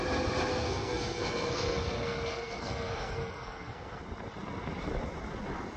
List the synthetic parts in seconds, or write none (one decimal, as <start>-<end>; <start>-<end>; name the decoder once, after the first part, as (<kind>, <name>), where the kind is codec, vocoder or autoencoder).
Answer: 0.5-4.0 (codec, SNAC)